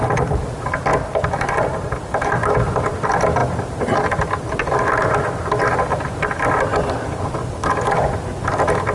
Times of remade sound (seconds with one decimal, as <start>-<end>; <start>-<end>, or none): none